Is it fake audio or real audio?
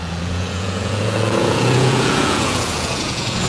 fake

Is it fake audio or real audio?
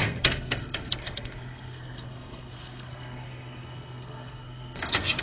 fake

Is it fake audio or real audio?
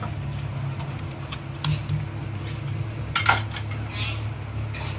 real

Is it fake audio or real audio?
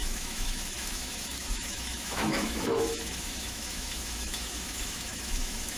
fake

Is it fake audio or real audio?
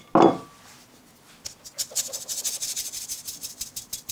real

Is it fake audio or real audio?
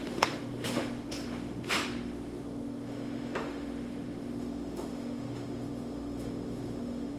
fake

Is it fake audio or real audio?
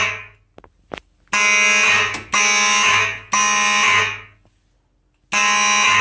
real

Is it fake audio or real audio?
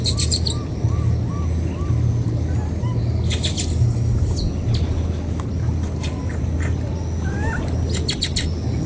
real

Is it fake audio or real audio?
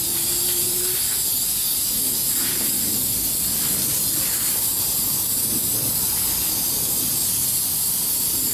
fake